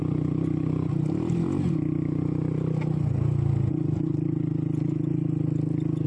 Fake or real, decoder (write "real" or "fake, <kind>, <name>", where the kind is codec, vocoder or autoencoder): real